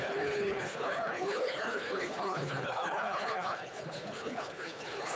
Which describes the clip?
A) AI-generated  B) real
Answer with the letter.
A